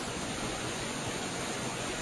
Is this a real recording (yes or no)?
no